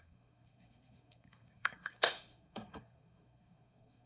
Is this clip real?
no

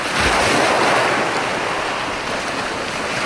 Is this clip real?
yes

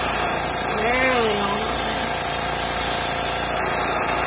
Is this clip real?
yes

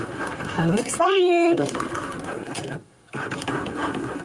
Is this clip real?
no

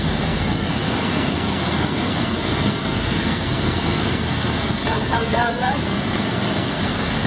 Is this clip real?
no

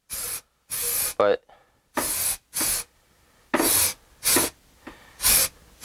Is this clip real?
yes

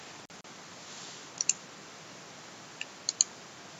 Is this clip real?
yes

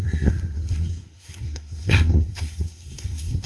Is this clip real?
no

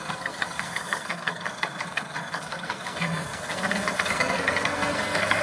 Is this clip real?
no